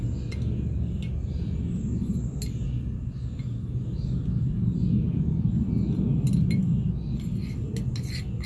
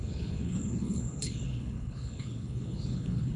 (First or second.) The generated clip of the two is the second